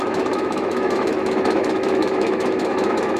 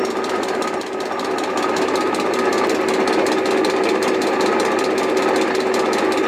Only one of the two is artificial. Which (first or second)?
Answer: first